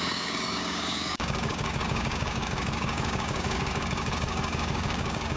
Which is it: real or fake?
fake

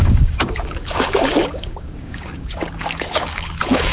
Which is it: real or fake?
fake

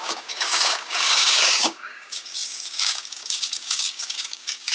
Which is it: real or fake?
fake